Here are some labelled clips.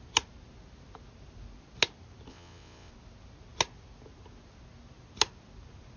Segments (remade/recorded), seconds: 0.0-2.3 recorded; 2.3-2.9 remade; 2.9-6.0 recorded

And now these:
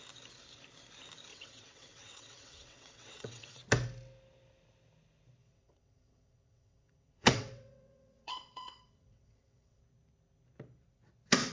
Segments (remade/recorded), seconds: 0.0-1.3 recorded; 1.3-3.6 remade; 3.6-5.4 recorded; 5.4-9.8 remade; 9.8-11.5 recorded

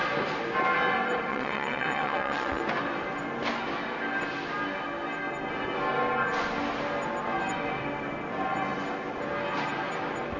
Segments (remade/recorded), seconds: 0.0-1.3 recorded; 1.3-2.6 remade; 2.6-10.4 recorded

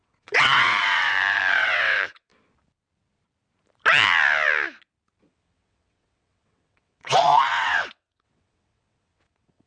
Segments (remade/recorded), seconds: 0.0-2.3 remade; 2.3-5.3 recorded; 5.3-9.7 remade

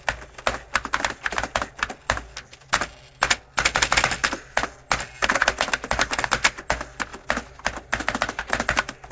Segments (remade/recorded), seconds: 0.0-9.1 recorded

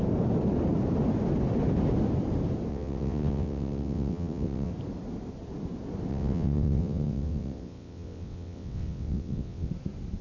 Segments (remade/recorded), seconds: 0.0-2.7 recorded; 2.7-4.7 remade; 4.7-6.1 recorded; 6.1-9.7 remade; 9.7-10.2 recorded